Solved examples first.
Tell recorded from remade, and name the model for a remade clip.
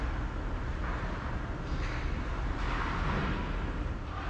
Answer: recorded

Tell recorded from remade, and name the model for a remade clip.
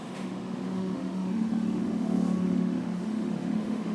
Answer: remade, autoencoder, DAC-VAE